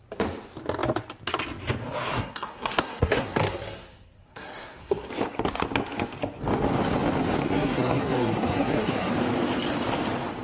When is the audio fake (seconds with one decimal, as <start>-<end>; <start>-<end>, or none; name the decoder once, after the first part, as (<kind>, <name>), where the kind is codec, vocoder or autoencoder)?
2.1-5.1 (codec, SNAC); 7.4-9.1